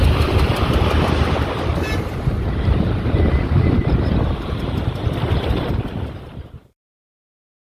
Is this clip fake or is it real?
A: fake